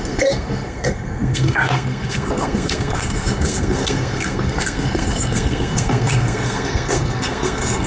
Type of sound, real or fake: fake